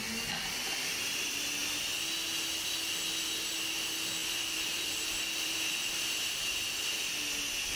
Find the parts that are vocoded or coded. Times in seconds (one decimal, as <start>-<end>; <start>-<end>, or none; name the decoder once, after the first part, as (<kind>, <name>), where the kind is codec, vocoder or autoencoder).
4.2-6.4 (vocoder, BigVGAN v2)